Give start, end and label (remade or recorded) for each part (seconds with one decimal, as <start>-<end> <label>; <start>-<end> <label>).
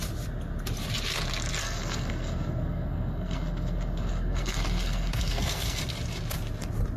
0.0-1.6 recorded; 1.6-5.8 remade; 5.8-7.0 recorded